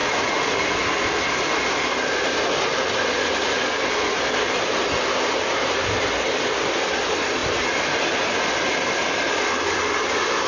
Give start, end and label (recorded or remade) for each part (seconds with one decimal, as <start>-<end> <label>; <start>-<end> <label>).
0.0-0.6 remade; 0.6-10.5 recorded